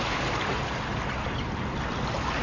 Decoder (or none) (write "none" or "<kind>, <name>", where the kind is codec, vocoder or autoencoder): none